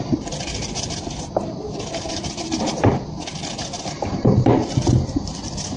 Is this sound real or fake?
fake